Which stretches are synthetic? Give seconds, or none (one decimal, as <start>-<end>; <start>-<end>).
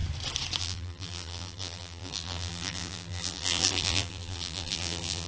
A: 0.6-5.3